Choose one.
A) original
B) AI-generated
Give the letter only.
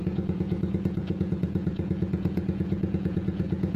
B